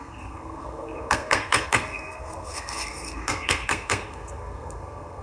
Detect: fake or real fake